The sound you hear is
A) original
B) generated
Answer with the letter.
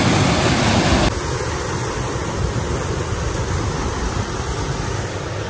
A